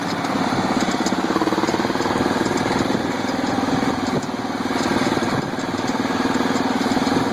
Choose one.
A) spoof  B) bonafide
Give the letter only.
B